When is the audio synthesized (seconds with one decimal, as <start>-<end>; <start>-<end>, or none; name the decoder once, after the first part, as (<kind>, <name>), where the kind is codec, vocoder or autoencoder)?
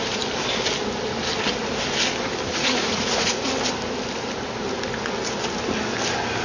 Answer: 2.5-3.5 (vocoder, Vocos)